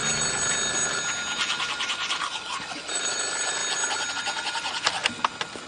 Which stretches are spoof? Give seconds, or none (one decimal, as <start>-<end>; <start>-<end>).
1.6-3.6; 4.1-5.0